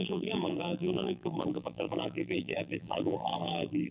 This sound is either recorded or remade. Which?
remade